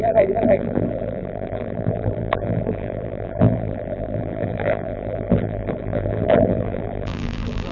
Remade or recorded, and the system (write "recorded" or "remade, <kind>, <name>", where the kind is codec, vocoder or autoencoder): remade, vocoder, BigVGAN v2